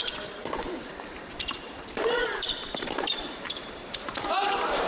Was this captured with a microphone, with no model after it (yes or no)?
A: no